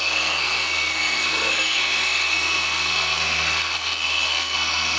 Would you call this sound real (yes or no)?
no